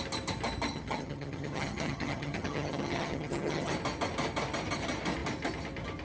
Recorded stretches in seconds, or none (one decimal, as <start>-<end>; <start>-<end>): 0.0-0.7; 3.7-6.0